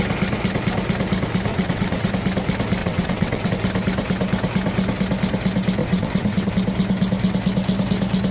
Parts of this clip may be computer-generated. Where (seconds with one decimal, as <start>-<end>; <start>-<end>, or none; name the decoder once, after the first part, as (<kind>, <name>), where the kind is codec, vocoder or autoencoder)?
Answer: 1.5-2.1 (vocoder, WaveNeXt); 2.8-3.5; 5.8-6.5